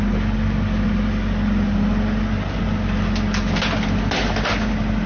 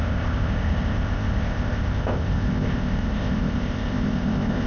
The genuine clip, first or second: first